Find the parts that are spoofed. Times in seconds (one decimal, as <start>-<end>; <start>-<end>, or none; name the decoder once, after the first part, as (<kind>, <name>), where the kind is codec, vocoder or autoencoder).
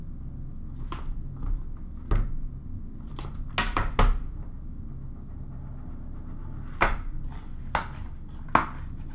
none